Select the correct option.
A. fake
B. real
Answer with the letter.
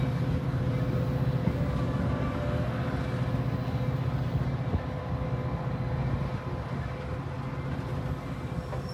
B